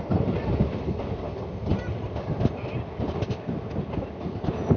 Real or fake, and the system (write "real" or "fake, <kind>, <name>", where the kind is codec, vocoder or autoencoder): real